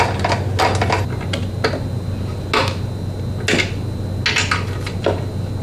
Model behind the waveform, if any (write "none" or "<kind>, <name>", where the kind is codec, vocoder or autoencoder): none